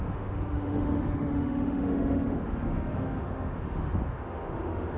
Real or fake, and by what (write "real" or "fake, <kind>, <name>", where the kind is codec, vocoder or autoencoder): fake, autoencoder, DAC-VAE